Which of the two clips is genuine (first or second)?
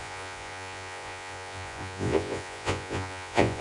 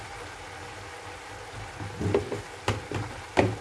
second